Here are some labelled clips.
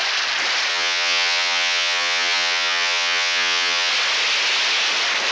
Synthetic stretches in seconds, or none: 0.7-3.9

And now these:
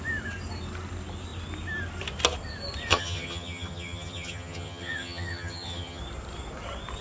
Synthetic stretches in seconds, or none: 2.9-6.0

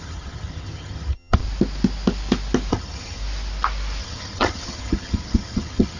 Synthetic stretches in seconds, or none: 0.0-1.4; 2.7-3.2; 4.0-6.0

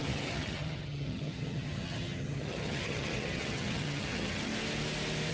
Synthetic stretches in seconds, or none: 0.0-4.5

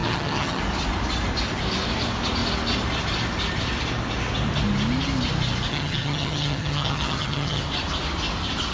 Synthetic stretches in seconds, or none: 0.0-0.6; 5.7-7.6

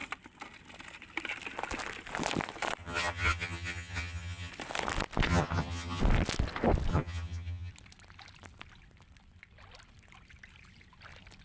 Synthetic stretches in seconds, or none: 2.8-4.5; 5.3-6.0; 6.9-7.7

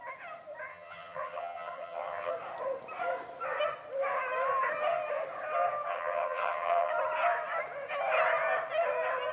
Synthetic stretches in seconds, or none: 0.7-2.3; 5.9-6.9

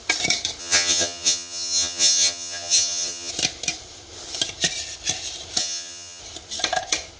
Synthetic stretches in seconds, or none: 0.6-3.3; 5.6-6.2